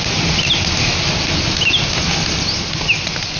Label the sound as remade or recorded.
recorded